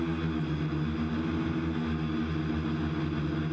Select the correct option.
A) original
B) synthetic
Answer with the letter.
A